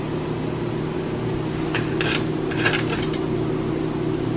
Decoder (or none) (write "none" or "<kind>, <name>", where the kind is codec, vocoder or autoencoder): none